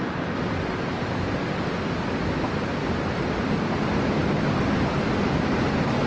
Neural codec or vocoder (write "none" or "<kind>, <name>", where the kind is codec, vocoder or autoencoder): none